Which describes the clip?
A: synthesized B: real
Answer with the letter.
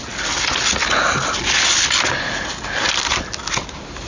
B